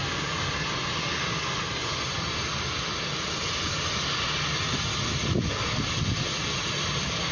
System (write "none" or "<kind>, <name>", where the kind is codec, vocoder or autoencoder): none